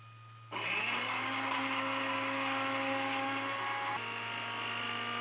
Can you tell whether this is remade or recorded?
recorded